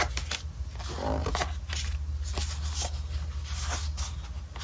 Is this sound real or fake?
real